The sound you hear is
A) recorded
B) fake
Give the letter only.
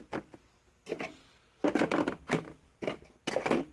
A